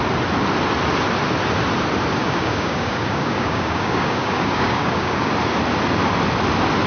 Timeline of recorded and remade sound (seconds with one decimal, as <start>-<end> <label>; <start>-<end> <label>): 0.0-2.2 recorded; 2.2-5.3 remade; 5.3-6.9 recorded